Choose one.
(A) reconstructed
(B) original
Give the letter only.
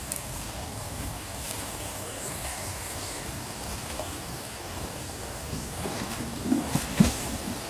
A